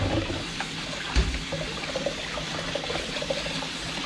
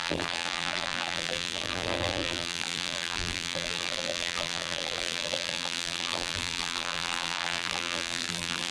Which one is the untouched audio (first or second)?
first